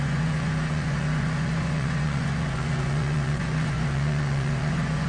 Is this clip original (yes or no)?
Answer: no